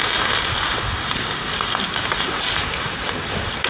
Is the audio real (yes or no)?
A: yes